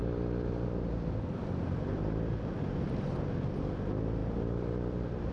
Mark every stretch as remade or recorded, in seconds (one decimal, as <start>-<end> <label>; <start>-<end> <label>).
0.0-3.2 remade; 3.2-4.2 recorded; 4.2-5.3 remade